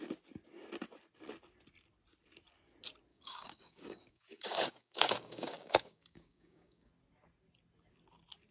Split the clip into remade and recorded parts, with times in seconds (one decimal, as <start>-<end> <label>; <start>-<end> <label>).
0.0-3.1 recorded; 3.1-6.9 remade; 6.9-8.5 recorded